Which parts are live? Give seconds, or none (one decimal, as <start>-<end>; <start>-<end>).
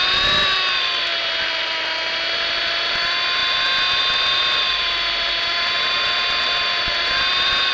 0.0-7.7